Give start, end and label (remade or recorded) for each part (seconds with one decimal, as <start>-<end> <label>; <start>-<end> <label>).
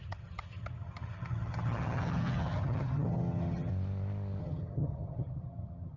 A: 0.0-3.7 remade; 3.7-4.4 recorded; 4.4-6.0 remade